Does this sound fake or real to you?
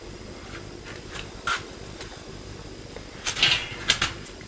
real